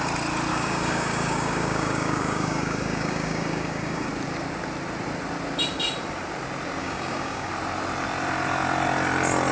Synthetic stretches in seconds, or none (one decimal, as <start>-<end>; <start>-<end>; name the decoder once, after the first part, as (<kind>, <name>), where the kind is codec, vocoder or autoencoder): 0.5-4.1 (codec, DAC); 6.8-7.5